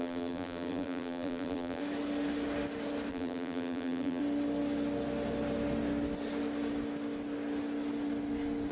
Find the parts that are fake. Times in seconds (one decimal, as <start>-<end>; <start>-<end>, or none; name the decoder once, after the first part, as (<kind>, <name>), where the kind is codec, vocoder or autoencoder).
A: 0.0-1.8 (vocoder, BigVGAN v2); 3.1-4.2